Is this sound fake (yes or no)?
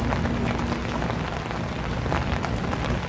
no